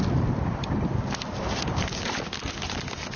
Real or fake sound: real